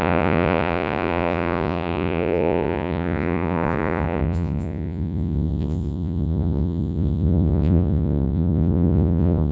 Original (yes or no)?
no